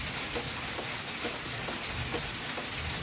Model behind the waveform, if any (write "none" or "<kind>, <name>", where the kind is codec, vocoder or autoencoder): none